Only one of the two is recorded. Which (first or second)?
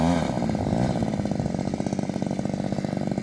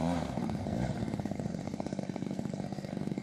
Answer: first